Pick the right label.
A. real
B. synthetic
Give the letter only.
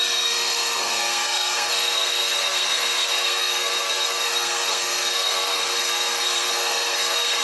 B